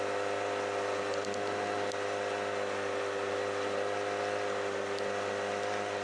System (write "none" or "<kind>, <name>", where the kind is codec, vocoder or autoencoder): none